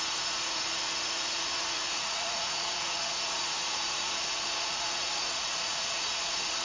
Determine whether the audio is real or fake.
fake